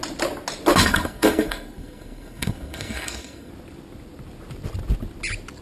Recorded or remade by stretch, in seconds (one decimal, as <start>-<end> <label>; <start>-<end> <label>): 0.0-0.8 recorded; 0.8-3.5 remade; 3.5-5.6 recorded